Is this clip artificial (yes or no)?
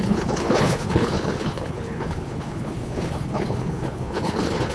yes